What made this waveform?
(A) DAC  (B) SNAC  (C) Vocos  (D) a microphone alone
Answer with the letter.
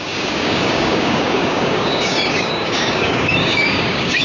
A